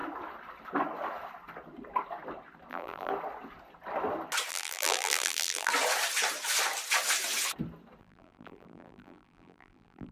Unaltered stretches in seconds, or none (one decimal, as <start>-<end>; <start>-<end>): 0.0-2.7; 3.1-4.5; 5.7-8.0